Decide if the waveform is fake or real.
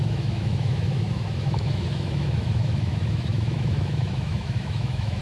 fake